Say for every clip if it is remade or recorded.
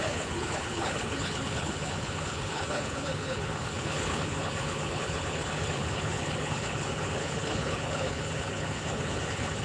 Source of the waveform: remade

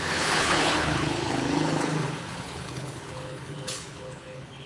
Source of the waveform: remade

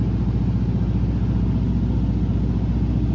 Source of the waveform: recorded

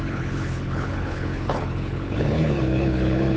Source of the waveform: remade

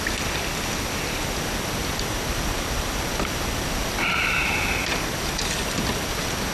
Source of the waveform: recorded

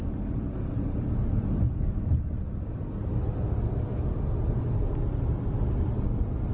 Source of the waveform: recorded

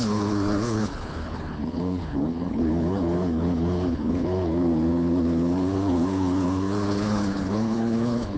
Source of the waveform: remade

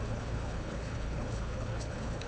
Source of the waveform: remade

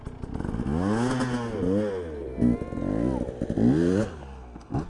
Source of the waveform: recorded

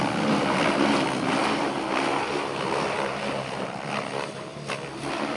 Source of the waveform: recorded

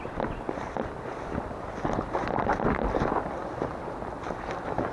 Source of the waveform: recorded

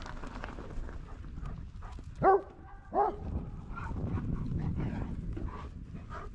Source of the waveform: recorded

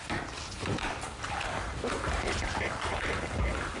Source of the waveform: recorded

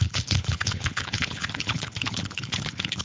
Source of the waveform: remade